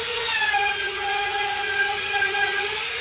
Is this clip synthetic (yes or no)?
yes